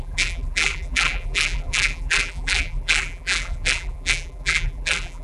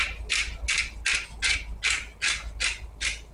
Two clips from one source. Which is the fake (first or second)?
first